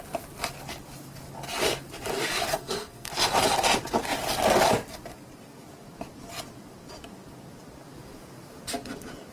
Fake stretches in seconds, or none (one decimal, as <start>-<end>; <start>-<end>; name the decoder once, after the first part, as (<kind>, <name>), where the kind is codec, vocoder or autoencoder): 2.5-3.1 (codec, SNAC)